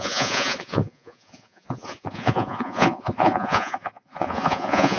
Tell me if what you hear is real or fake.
fake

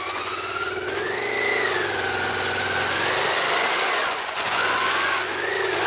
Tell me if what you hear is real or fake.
fake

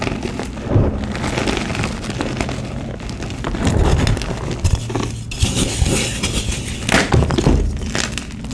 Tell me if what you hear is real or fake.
real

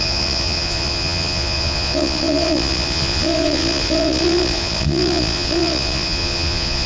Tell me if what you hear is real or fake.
fake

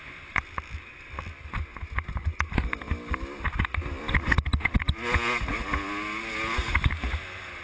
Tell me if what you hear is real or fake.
real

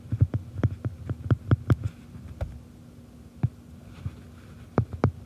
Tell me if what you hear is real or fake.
real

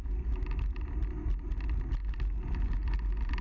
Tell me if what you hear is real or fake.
real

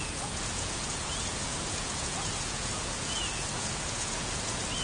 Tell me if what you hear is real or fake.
fake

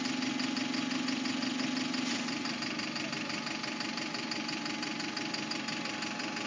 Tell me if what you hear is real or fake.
real